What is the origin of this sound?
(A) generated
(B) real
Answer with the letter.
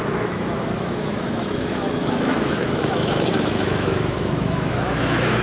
A